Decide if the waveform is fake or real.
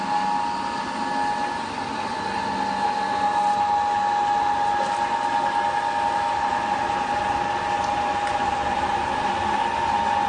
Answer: real